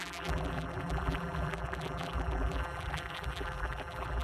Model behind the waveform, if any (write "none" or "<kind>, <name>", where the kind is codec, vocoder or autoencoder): vocoder, BigVGAN v2